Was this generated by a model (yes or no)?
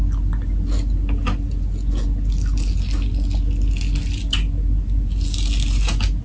no